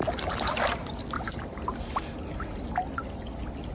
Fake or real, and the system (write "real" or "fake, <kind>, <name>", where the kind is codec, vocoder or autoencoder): real